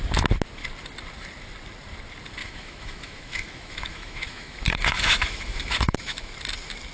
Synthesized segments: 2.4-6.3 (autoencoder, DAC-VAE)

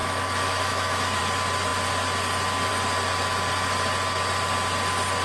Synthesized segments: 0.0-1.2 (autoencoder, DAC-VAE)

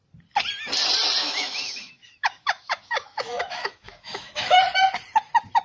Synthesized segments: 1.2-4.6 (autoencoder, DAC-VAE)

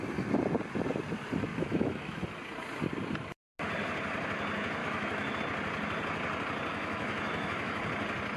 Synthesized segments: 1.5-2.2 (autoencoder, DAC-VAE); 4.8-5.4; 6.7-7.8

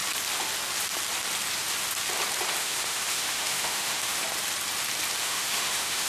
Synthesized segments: 2.6-4.2 (autoencoder, DAC-VAE); 5.2-6.1

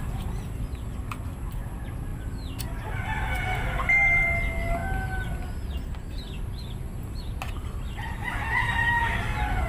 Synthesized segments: none

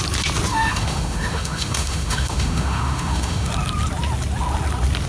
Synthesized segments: 0.5-3.5 (autoencoder, DAC-VAE)